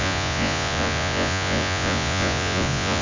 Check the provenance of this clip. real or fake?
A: fake